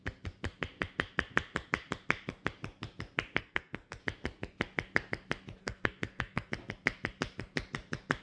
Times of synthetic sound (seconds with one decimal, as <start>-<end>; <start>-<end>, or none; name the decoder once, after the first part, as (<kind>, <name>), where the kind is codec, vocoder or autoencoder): 3.4-4.0 (codec, SNAC); 5.6-6.5